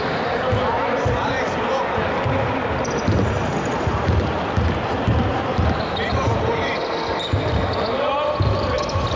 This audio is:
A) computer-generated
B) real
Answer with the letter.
B